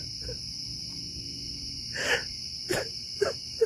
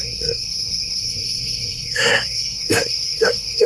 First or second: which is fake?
second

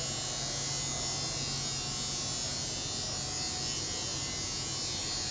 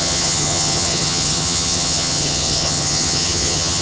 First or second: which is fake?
second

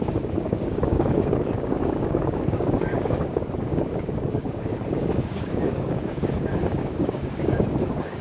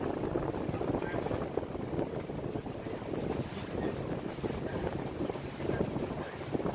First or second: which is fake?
first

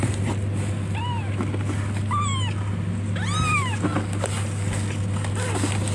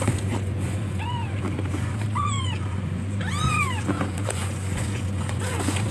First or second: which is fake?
second